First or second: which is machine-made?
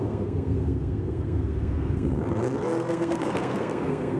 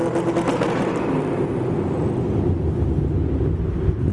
first